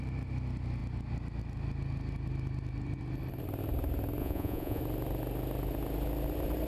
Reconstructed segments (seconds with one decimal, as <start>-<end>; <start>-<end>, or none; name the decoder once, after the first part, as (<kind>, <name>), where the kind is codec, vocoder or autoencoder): 4.2-4.8 (vocoder, Vocos)